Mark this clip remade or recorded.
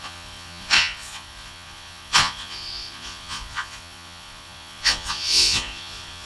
remade